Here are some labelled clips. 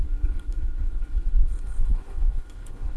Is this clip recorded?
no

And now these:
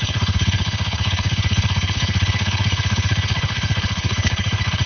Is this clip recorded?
no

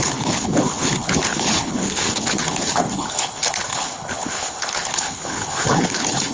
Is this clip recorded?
no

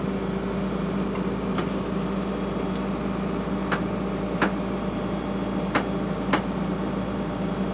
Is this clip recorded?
yes